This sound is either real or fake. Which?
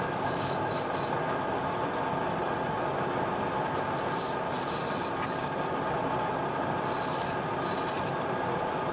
real